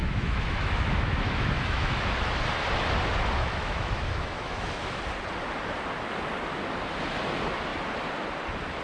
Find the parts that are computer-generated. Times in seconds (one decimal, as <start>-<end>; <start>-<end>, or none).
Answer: 0.0-2.0; 3.4-5.0